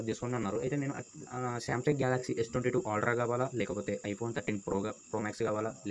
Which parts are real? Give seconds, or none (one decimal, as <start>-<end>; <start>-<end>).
0.0-5.9